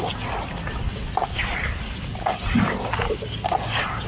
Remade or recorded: recorded